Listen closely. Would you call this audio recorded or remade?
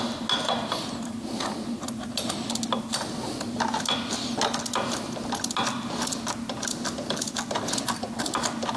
recorded